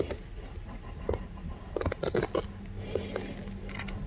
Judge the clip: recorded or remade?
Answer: recorded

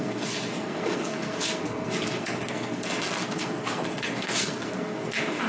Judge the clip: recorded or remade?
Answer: remade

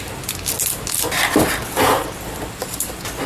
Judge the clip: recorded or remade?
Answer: recorded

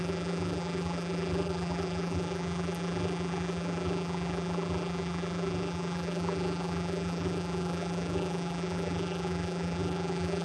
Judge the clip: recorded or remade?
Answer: remade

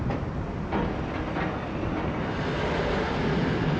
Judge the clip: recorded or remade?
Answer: recorded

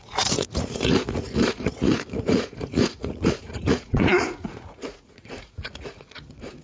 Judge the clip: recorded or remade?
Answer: remade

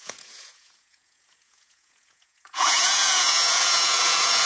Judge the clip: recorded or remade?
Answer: remade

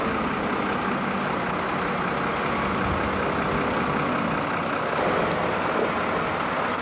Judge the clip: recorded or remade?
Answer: recorded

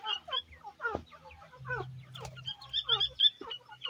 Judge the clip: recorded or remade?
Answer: recorded